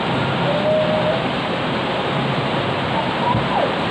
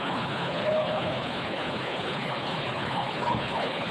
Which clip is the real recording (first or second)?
first